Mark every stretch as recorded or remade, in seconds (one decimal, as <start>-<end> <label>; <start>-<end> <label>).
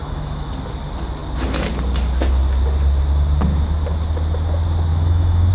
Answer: 0.0-0.5 remade; 0.5-4.9 recorded; 4.9-5.5 remade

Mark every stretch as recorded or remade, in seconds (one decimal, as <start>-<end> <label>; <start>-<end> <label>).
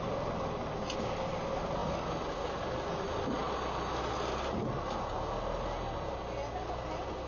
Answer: 0.0-7.3 recorded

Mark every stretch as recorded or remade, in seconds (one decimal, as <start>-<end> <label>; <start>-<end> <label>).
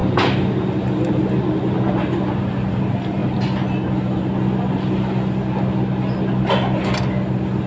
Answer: 0.0-7.7 recorded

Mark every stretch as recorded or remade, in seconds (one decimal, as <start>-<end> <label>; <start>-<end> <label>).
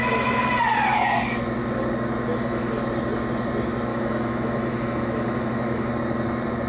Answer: 0.0-2.3 recorded; 2.3-2.8 remade; 2.8-3.9 recorded; 3.9-5.9 remade; 5.9-6.7 recorded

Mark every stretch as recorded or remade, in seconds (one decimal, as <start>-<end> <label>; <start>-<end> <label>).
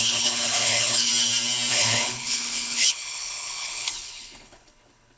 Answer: 0.0-1.1 remade; 1.1-1.7 recorded; 1.7-5.2 remade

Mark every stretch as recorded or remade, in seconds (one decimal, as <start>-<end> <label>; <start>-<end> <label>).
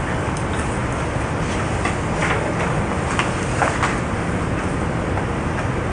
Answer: 0.0-5.9 recorded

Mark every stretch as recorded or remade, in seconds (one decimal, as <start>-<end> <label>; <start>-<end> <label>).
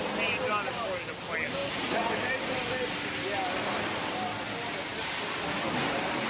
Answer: 0.0-6.3 recorded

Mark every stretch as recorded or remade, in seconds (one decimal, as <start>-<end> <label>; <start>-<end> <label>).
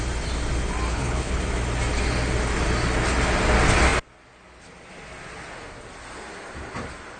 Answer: 0.0-0.9 recorded; 0.9-1.4 remade; 1.4-7.2 recorded